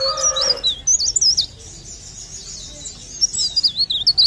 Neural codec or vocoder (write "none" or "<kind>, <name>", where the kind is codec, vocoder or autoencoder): none